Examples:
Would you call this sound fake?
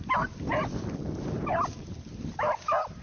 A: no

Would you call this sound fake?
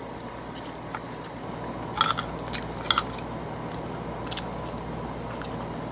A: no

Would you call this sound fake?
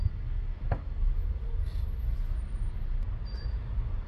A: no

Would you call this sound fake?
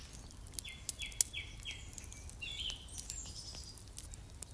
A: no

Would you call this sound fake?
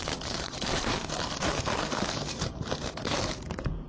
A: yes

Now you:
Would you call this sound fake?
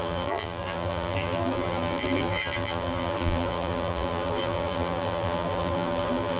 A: yes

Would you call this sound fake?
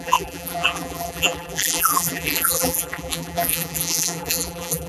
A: yes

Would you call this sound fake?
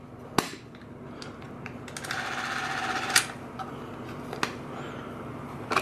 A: no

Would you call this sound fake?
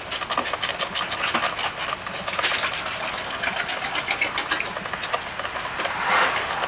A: no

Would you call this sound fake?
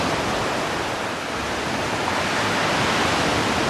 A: no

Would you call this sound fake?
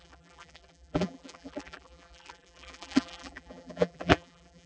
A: yes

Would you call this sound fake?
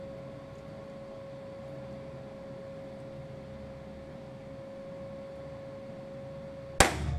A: no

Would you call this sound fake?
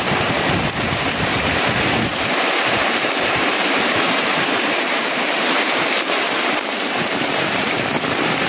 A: yes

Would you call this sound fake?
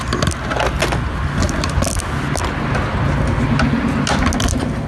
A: no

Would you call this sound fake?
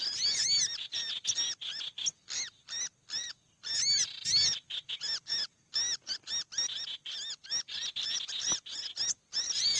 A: no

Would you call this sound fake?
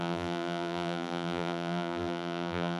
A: yes